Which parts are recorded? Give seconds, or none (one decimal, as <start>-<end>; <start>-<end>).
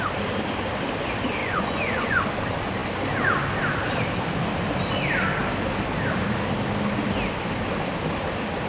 0.0-1.4; 2.2-8.7